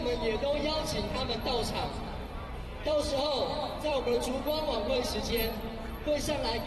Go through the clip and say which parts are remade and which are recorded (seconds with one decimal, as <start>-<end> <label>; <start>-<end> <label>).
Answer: 0.0-1.6 recorded; 1.6-5.6 remade; 5.6-6.7 recorded